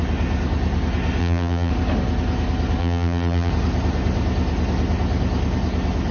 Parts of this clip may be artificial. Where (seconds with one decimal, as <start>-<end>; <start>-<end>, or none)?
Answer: 1.2-1.7; 2.8-3.5